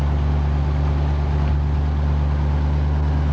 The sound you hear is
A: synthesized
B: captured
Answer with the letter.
B